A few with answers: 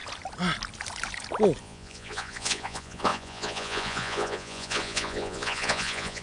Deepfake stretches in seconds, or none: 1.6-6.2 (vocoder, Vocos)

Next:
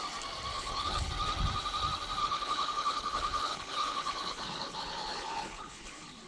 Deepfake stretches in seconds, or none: 0.5-1.1 (codec, HILCodec); 2.2-6.3

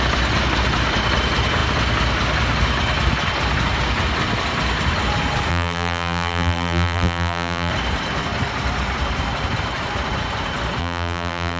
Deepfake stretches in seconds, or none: 5.5-7.7 (vocoder, BigVGAN v2); 10.8-11.6

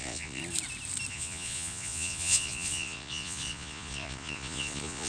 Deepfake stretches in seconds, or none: 0.0-0.4 (vocoder, Vocos); 1.1-5.1

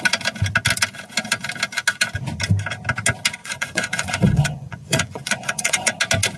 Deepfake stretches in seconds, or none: 3.4-5.9 (vocoder, Vocos)